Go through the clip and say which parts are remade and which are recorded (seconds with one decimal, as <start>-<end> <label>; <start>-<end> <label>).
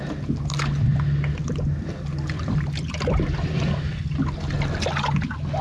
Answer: 0.0-5.6 recorded